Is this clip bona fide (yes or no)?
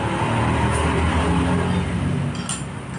yes